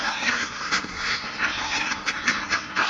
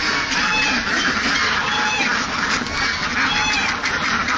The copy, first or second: first